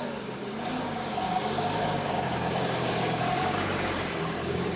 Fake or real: fake